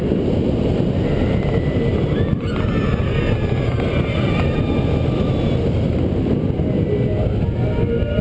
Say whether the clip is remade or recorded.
recorded